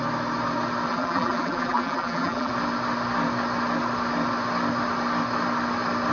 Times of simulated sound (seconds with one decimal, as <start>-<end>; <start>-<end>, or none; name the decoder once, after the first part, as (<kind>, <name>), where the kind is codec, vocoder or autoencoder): 0.9-2.5 (vocoder, BigVGAN v2)